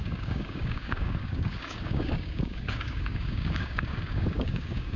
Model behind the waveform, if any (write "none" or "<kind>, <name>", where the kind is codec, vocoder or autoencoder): codec, DAC